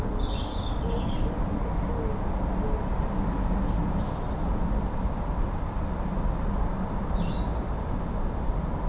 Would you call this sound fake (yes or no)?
no